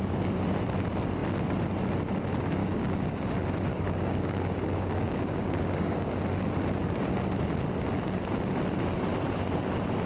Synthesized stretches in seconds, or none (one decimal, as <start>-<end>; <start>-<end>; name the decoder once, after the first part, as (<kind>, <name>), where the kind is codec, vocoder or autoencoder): 2.6-3.3 (codec, DAC); 3.7-6.1